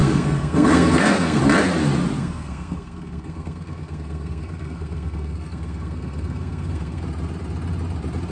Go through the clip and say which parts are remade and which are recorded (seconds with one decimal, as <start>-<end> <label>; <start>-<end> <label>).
0.0-1.4 remade; 1.4-2.2 recorded; 2.2-7.0 remade; 7.0-8.3 recorded